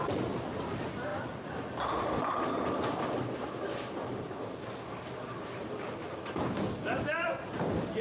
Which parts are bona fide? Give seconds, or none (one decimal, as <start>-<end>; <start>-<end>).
0.0-8.0